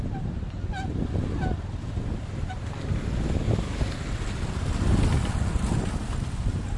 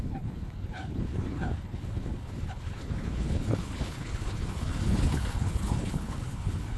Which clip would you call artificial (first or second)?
second